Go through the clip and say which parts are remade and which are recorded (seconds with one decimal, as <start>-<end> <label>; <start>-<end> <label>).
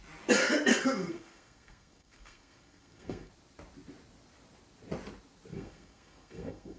0.0-0.7 recorded; 0.7-3.3 remade; 3.3-5.5 recorded; 5.5-6.8 remade